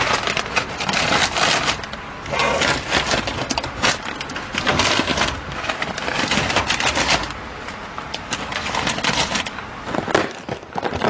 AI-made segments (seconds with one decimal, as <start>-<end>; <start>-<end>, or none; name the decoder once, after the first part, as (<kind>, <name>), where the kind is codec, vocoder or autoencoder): none